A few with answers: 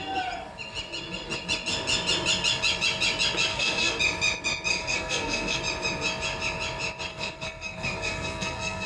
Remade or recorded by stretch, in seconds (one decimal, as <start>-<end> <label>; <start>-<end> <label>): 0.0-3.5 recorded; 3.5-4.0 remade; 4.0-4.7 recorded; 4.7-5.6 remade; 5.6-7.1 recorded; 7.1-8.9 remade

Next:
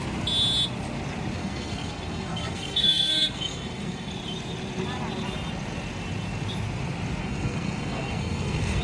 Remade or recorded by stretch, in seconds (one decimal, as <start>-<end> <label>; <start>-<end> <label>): 0.0-1.4 recorded; 1.4-4.1 remade; 4.1-7.2 recorded; 7.2-8.8 remade

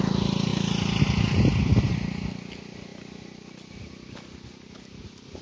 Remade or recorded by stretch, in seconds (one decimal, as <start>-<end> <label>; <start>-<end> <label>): 0.0-5.4 recorded

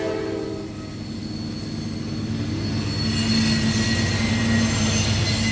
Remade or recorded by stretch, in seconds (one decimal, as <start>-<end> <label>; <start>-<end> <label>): 0.0-5.5 recorded

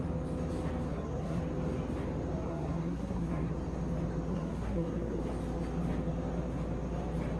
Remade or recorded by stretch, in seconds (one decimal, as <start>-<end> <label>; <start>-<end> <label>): 0.0-0.9 recorded; 0.9-1.4 remade; 1.4-2.5 recorded; 2.5-3.5 remade; 3.5-4.3 recorded; 4.3-5.2 remade; 5.2-7.4 recorded